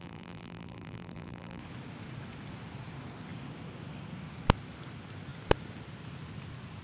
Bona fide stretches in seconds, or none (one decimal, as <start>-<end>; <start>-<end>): 1.6-6.8